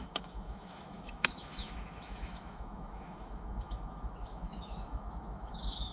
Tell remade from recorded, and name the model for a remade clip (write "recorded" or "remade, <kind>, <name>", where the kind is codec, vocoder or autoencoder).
remade, autoencoder, DAC-VAE